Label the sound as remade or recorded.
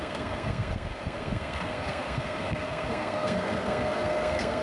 remade